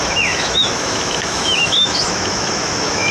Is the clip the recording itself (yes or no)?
no